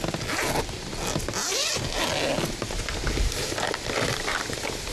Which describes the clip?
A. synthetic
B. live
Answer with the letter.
B